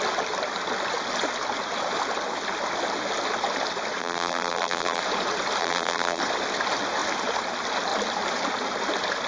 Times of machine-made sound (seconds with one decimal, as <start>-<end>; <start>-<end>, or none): 4.0-5.0; 5.6-6.2